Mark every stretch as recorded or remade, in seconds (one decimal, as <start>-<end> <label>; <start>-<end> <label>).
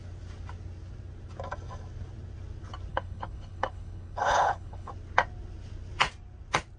0.0-2.9 recorded; 2.9-4.9 remade; 4.9-6.8 recorded